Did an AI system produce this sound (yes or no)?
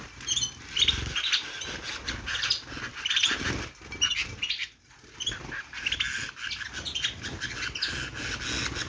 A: no